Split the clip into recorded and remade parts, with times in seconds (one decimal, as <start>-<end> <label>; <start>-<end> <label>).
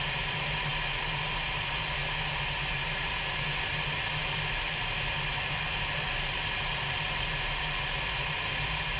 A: 0.0-9.0 recorded